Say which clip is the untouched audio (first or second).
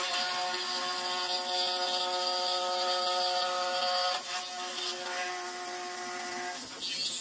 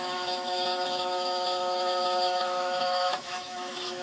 first